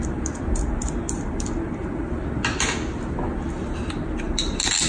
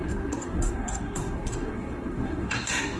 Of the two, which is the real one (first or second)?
first